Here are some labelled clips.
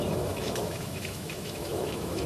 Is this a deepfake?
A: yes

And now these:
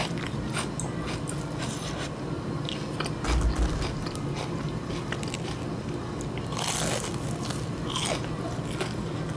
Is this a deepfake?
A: no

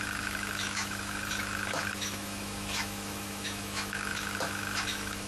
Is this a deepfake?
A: yes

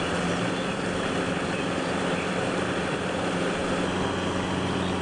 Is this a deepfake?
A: no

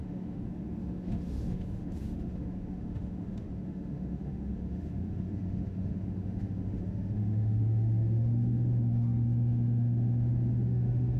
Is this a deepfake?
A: yes